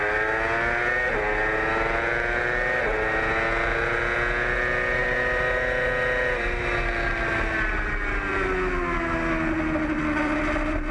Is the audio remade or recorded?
recorded